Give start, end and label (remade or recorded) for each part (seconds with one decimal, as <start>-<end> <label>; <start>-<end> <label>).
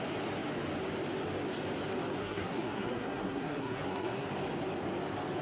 0.0-2.2 recorded; 2.2-4.3 remade; 4.3-5.4 recorded